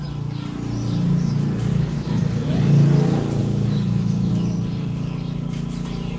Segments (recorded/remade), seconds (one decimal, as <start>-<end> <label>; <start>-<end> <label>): 0.0-1.7 recorded; 1.7-2.2 remade; 2.2-3.4 recorded; 3.4-4.3 remade; 4.3-6.2 recorded